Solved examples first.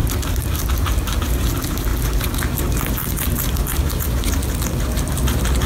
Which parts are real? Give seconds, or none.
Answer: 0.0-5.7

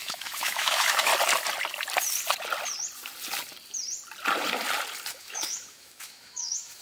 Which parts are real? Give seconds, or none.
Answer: 1.1-5.2

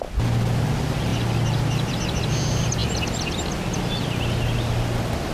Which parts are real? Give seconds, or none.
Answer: 0.0-5.3

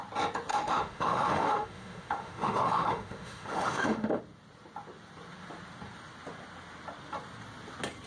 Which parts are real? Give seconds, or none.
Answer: 0.0-0.5; 4.2-8.1

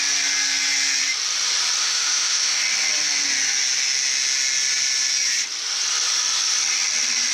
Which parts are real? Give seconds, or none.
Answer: 0.0-1.8; 2.6-7.3

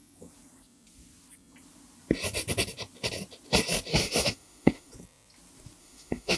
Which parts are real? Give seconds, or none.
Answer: 0.0-3.9; 4.9-5.8

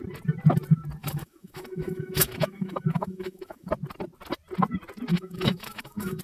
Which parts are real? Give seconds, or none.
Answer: 0.0-1.0; 3.7-5.1

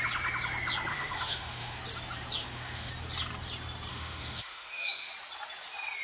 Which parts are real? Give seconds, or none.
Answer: 0.0-0.9; 1.8-2.4; 2.9-3.9; 5.1-6.0